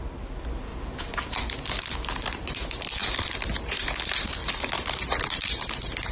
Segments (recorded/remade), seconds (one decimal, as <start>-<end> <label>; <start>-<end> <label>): 0.0-0.7 recorded; 0.7-3.9 remade; 3.9-4.4 recorded; 4.4-6.1 remade